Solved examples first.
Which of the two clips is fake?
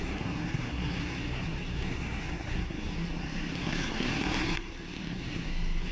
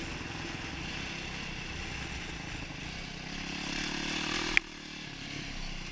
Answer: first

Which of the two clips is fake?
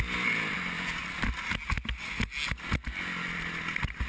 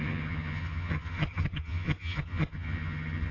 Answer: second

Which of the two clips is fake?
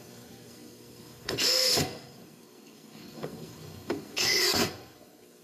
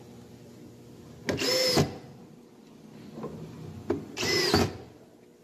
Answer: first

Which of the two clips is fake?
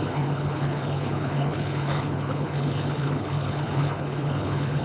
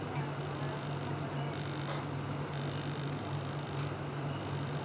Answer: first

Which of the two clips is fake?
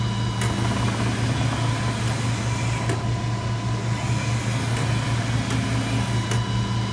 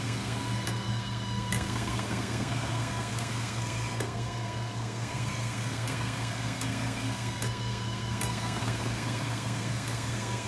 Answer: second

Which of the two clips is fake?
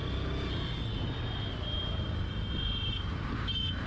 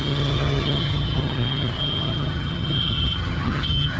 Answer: second